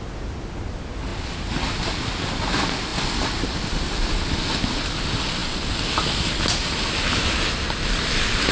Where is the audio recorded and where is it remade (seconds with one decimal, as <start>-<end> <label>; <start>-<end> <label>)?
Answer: 0.0-8.5 recorded